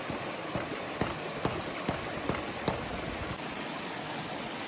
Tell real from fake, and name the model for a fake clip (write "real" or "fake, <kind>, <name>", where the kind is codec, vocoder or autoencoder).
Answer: real